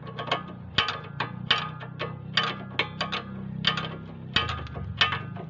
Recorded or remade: recorded